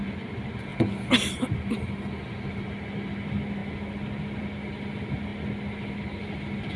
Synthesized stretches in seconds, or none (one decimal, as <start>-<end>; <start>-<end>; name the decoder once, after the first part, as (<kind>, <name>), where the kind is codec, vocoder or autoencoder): none